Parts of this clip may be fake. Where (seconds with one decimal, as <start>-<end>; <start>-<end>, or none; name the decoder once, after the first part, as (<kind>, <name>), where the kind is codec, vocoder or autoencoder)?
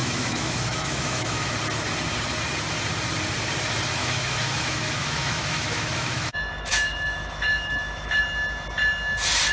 0.0-1.5 (autoencoder, DAC-VAE); 4.0-8.2